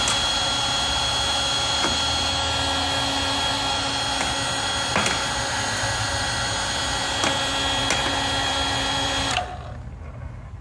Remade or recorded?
recorded